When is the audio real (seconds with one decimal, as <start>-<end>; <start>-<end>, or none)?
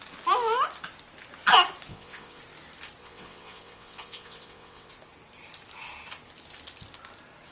0.0-1.9; 2.4-3.0; 4.9-7.5